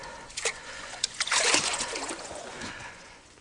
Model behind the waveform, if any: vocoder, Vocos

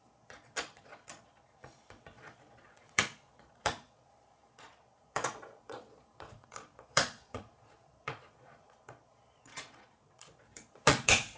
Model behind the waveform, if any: vocoder, Vocos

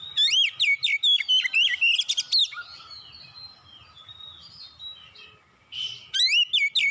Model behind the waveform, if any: none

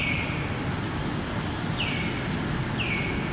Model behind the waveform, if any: none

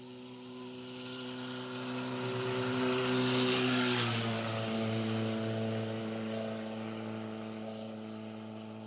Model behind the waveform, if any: none